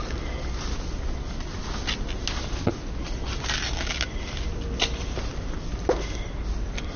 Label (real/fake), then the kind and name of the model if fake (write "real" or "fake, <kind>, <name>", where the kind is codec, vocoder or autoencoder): real